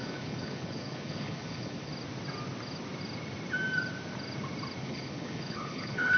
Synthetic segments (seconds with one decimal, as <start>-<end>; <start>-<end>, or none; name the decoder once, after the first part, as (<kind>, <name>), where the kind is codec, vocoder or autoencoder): 0.0-1.9 (codec, HILCodec); 4.8-6.2